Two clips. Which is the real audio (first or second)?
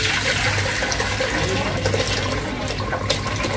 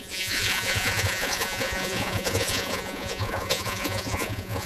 first